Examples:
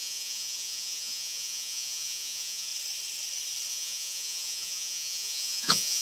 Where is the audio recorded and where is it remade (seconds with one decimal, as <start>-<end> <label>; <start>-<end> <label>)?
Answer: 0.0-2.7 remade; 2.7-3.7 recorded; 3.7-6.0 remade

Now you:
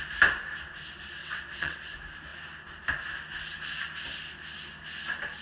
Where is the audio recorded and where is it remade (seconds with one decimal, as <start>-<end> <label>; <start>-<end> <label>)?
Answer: 0.0-1.2 recorded; 1.2-1.8 remade; 1.8-5.4 recorded

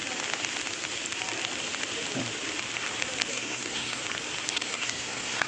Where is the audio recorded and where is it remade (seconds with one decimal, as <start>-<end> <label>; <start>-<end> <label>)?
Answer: 0.0-3.3 recorded; 3.3-4.0 remade; 4.0-4.5 recorded; 4.5-5.5 remade